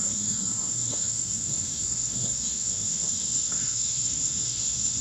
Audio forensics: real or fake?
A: fake